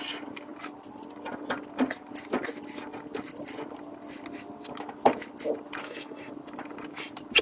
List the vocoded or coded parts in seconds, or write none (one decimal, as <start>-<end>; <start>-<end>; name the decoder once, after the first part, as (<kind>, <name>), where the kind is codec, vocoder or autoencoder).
5.8-6.3 (codec, SNAC)

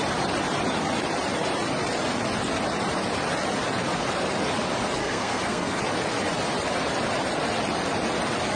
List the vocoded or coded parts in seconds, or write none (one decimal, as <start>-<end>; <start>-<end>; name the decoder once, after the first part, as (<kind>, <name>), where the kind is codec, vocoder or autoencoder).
5.0-5.8 (codec, SNAC)

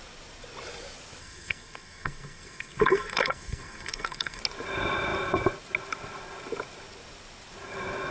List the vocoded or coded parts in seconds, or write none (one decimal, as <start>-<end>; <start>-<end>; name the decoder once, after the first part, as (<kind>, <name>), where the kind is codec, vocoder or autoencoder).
1.2-4.4 (codec, SNAC)

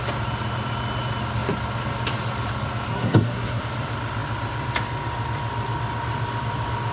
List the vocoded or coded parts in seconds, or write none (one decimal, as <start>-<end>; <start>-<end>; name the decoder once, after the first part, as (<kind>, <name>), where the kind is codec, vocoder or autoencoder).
2.9-3.6 (codec, SNAC)

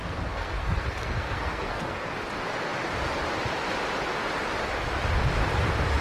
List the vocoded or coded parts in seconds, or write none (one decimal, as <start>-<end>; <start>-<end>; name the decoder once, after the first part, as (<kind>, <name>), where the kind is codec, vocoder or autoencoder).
0.0-2.1 (codec, SNAC)

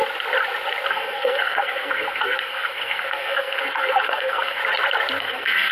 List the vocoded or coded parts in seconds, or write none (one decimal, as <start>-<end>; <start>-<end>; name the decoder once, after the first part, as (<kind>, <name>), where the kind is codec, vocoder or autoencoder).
0.9-4.6 (codec, SNAC); 5.2-5.7

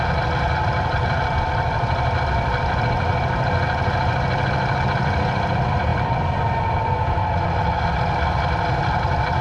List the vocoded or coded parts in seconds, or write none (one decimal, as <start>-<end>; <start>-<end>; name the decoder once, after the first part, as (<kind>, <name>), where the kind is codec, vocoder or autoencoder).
none

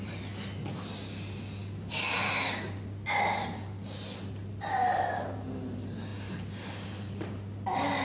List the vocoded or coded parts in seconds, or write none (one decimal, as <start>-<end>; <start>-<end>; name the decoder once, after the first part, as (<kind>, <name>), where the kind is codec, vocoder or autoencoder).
none